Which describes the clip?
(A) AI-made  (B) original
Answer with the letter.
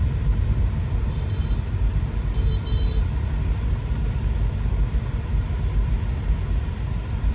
B